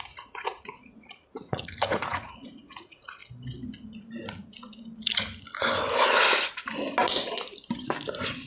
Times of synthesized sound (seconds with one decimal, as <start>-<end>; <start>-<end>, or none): 0.0-3.2

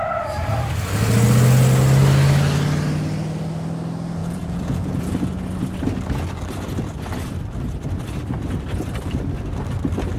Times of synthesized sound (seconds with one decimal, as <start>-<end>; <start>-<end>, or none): 4.2-5.1

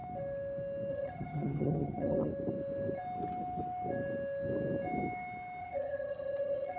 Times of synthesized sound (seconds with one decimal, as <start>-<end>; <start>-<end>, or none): 0.9-2.3; 5.6-6.8

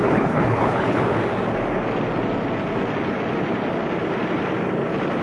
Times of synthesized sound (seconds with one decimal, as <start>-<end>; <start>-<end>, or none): 0.0-1.0

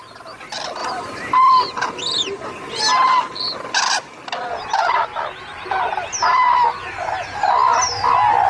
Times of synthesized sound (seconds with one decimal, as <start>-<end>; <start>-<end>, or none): none

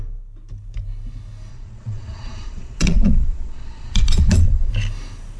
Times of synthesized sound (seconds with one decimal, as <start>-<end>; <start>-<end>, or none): 1.5-4.7

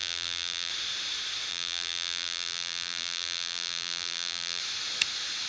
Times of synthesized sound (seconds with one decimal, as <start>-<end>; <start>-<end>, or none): 0.0-0.7; 1.5-4.6

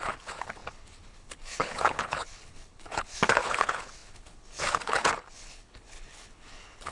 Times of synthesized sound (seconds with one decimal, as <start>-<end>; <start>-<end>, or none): 0.0-6.9